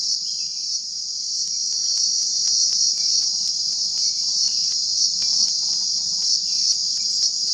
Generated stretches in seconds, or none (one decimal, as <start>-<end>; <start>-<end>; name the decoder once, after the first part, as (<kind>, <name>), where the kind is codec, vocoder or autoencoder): 0.5-4.7 (vocoder, Vocos); 5.4-6.1